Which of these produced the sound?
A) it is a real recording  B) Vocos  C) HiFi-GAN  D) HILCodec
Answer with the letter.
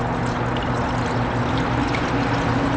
A